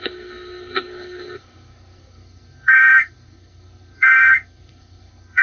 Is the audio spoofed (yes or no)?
yes